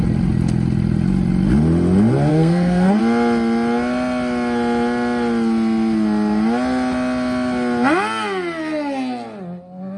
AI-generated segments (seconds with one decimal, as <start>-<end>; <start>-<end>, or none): 2.3-3.0